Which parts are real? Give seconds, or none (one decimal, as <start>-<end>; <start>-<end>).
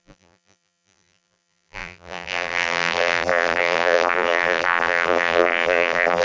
none